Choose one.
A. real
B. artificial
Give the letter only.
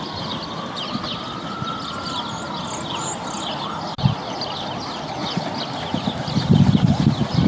A